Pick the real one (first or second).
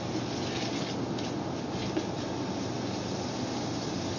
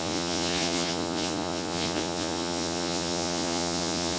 first